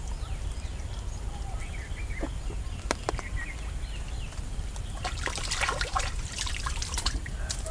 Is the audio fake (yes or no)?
yes